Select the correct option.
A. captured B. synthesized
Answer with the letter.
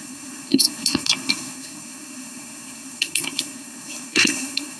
B